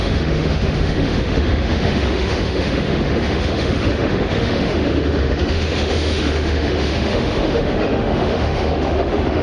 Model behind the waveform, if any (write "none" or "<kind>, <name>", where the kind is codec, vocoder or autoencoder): autoencoder, DAC-VAE